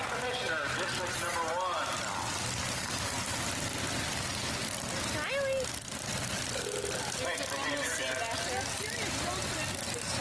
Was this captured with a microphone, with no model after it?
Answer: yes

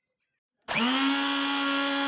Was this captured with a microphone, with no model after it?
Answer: yes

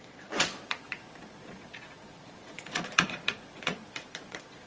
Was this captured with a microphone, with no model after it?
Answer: no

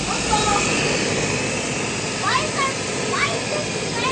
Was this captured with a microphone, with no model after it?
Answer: yes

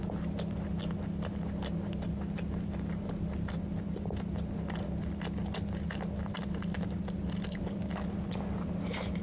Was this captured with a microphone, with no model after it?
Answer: yes